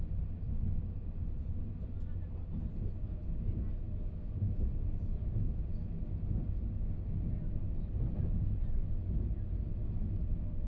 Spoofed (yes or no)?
no